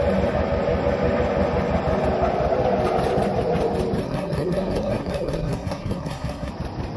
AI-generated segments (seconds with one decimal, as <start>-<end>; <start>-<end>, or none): 4.0-6.5